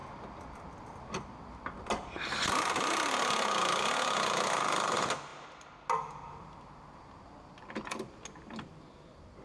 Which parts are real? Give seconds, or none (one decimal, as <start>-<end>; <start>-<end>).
0.0-9.4

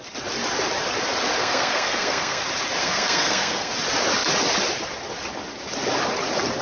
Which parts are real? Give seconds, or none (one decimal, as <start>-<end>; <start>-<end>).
0.0-1.4; 2.4-2.8; 3.7-6.6

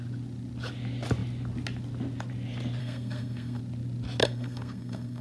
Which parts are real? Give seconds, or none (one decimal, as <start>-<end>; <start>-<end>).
0.0-2.8; 3.6-4.2

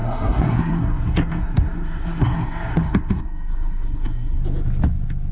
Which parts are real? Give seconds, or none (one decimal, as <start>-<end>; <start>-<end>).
4.4-5.3